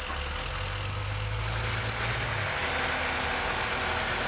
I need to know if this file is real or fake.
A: real